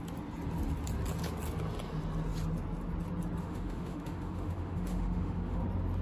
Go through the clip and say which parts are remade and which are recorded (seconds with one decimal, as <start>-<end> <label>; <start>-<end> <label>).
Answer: 0.0-3.4 recorded; 3.4-5.6 remade; 5.6-6.0 recorded